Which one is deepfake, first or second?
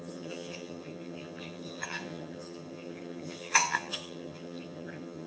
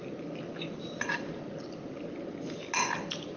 first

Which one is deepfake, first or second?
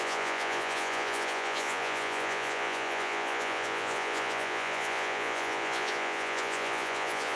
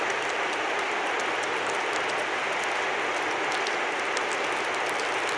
first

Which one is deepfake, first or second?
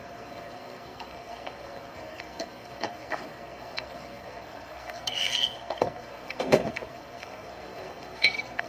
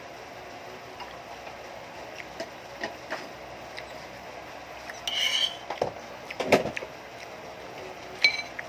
first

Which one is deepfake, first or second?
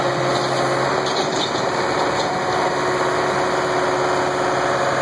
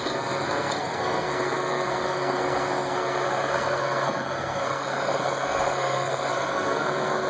second